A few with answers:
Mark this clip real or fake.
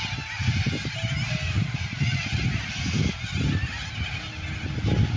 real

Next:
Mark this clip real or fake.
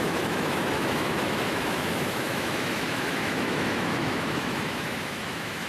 fake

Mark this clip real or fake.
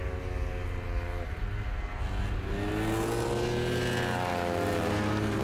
real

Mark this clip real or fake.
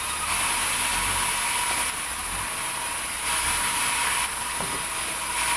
real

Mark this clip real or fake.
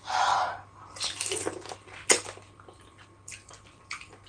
real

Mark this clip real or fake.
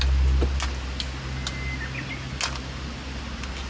real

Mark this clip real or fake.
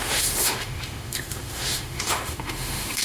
fake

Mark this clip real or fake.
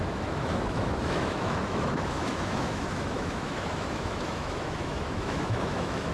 fake